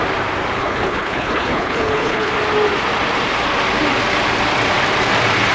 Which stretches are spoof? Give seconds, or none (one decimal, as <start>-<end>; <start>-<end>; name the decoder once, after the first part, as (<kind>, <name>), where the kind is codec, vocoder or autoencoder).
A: 0.6-2.3 (codec, HILCodec)